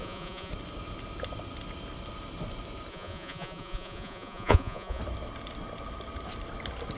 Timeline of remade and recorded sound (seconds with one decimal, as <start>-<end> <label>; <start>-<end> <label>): 0.0-0.5 remade; 0.5-2.9 recorded; 2.9-5.0 remade; 5.0-7.0 recorded